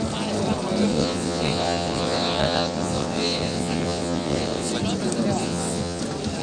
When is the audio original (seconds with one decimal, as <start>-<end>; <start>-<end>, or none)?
0.0-0.9; 4.7-5.4; 6.0-6.4